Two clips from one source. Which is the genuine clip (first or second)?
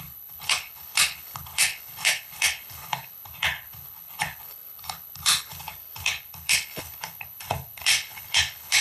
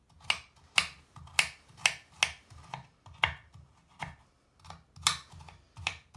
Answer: second